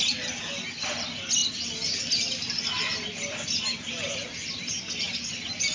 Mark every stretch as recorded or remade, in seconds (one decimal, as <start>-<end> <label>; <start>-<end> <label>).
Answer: 0.0-5.7 recorded